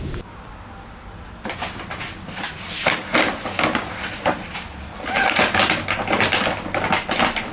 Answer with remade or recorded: recorded